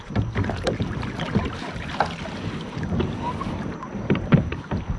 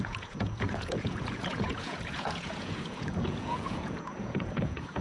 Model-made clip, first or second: second